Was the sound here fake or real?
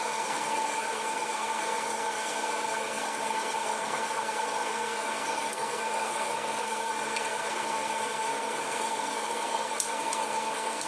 fake